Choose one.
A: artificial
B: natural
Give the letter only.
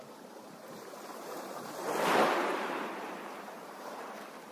A